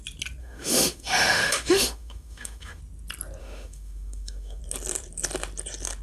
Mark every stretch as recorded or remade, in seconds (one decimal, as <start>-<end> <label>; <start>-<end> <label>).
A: 0.0-0.4 recorded; 0.4-2.8 remade; 2.8-3.4 recorded; 3.4-4.6 remade; 4.6-6.0 recorded